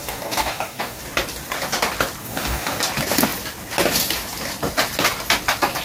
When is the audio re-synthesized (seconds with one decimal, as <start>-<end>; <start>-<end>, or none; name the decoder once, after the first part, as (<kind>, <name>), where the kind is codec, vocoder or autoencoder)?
0.0-1.0 (codec, DAC); 2.2-2.8